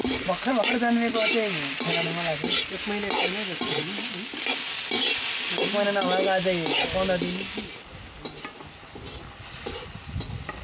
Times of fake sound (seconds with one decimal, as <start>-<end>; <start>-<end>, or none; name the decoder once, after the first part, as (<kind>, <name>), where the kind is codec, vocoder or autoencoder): none